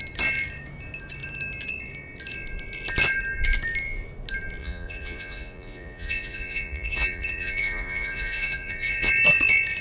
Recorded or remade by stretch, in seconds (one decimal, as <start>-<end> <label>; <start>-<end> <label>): 0.0-4.6 recorded; 4.6-9.1 remade; 9.1-9.8 recorded